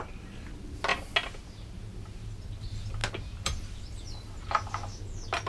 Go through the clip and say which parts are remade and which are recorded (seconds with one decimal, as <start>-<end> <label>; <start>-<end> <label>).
0.0-5.5 recorded